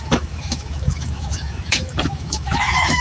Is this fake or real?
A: fake